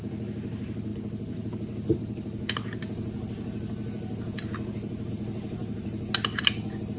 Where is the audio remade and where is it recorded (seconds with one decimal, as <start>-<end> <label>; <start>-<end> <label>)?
0.0-7.0 recorded